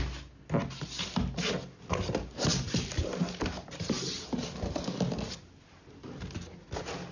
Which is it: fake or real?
real